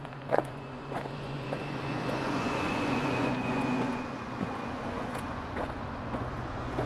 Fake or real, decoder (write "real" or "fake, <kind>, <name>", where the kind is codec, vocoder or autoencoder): fake, vocoder, Vocos